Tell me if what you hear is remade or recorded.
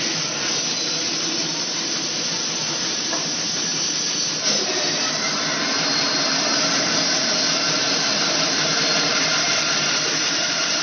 remade